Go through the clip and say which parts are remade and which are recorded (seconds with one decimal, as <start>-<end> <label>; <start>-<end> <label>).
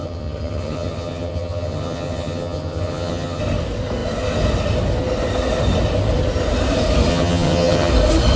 0.0-3.4 remade; 3.4-7.1 recorded; 7.1-7.9 remade; 7.9-8.4 recorded